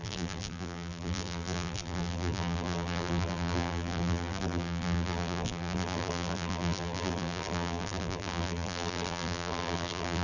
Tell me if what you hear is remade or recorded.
remade